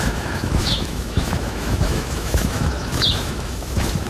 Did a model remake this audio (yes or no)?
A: yes